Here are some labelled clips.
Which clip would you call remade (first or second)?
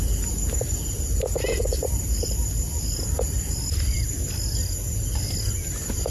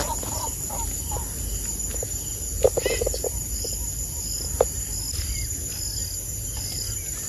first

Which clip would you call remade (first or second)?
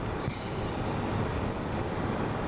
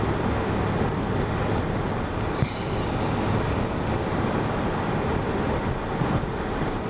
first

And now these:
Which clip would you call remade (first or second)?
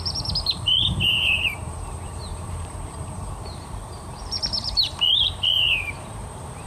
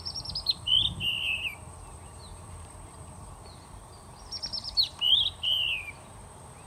first